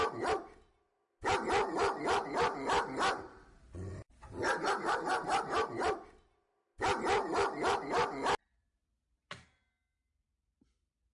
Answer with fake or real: real